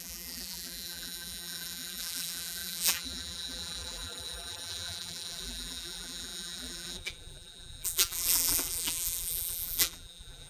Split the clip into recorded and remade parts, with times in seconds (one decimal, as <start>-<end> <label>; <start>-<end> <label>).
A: 0.0-10.5 remade